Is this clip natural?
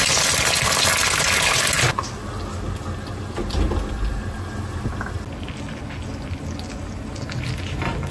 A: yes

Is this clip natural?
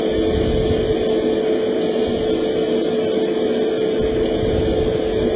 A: yes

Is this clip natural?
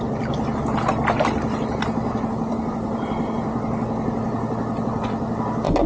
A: yes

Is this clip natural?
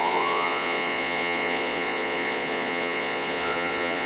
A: no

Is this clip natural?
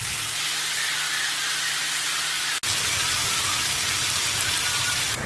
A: yes